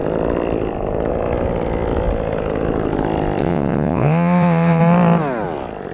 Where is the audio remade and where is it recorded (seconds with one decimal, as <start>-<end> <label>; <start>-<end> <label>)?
0.0-3.4 recorded; 3.4-4.8 remade; 4.8-5.9 recorded